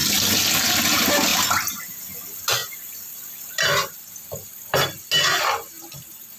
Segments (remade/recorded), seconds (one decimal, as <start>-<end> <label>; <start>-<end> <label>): 0.0-0.9 remade; 0.9-6.4 recorded